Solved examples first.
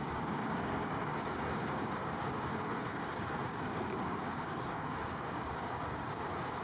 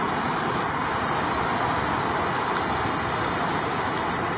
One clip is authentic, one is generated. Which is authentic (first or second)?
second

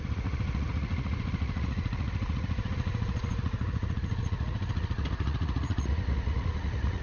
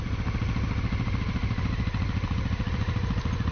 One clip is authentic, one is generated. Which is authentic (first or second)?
second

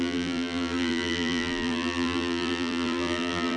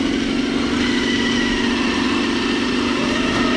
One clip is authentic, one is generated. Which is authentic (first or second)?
second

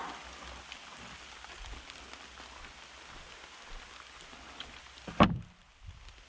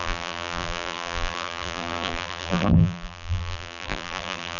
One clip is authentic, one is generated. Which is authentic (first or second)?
first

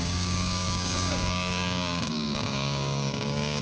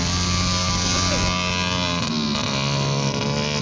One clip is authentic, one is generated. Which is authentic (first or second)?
second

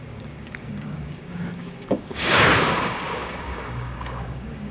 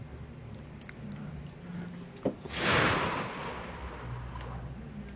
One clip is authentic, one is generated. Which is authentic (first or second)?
second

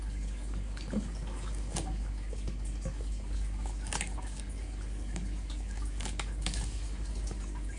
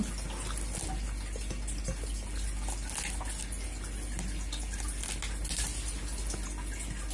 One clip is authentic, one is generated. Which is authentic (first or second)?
second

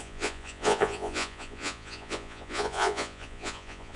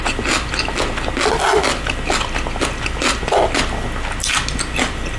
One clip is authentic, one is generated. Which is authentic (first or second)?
second